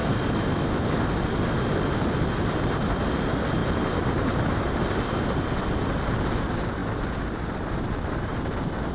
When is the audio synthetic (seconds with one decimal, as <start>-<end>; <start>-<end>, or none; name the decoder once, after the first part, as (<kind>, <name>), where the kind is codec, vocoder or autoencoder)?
3.6-5.4 (vocoder, BigVGAN v2); 6.8-8.1